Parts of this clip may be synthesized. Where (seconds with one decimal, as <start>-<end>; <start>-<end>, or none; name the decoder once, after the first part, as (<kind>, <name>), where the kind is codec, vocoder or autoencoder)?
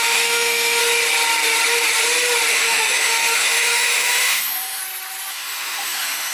0.0-0.8 (autoencoder, DAC-VAE); 2.5-4.8; 5.3-6.3